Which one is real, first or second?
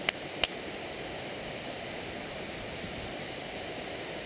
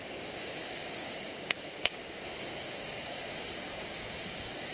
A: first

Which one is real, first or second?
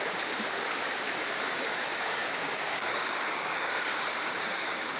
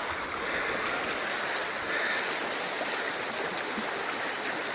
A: second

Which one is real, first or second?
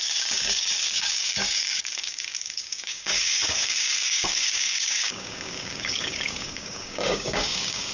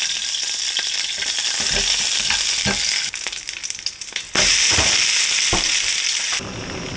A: second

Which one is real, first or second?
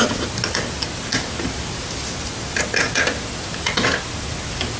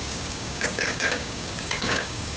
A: first